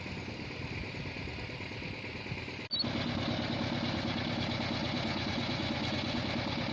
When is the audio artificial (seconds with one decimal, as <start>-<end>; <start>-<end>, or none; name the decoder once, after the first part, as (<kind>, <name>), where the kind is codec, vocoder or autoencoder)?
4.8-6.2 (vocoder, Vocos)